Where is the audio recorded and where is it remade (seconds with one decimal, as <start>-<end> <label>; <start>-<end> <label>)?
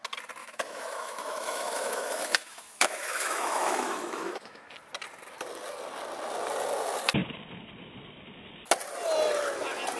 0.0-0.4 recorded; 0.4-4.6 remade; 4.6-10.0 recorded